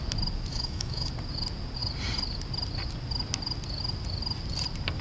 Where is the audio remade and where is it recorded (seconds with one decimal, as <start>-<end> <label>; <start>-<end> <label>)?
0.0-0.5 recorded; 0.5-1.1 remade; 1.1-5.0 recorded